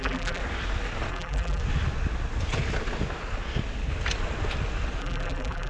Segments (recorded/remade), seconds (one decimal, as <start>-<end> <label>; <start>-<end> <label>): 0.0-0.4 remade; 0.4-1.1 recorded; 1.1-1.6 remade; 1.6-5.0 recorded; 5.0-5.7 remade